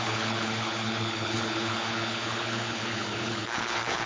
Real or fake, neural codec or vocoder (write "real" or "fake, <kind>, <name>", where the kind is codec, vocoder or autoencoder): fake, codec, HILCodec